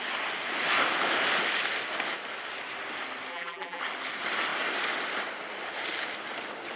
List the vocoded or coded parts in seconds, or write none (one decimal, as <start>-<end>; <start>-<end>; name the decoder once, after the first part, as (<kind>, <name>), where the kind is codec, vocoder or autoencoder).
3.3-3.8 (vocoder, BigVGAN v2)